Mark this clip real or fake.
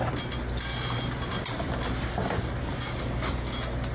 real